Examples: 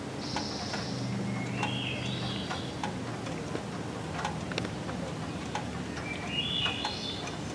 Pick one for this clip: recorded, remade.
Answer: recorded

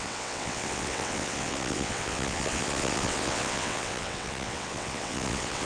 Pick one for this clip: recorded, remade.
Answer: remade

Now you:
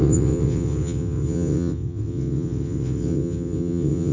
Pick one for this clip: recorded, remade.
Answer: remade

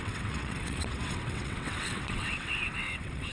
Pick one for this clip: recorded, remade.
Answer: remade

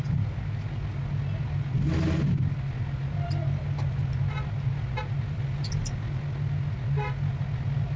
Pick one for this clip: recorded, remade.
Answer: recorded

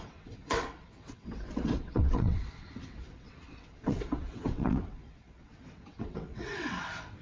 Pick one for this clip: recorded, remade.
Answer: remade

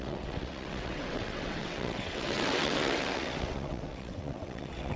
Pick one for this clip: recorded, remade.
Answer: remade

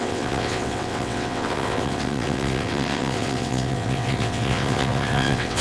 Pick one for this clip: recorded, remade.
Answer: remade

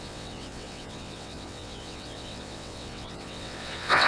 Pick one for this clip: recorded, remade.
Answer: remade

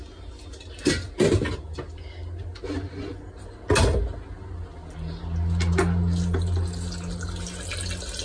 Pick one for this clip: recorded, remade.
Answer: recorded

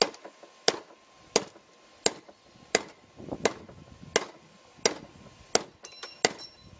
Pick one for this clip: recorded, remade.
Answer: recorded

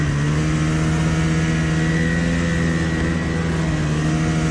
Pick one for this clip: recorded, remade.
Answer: recorded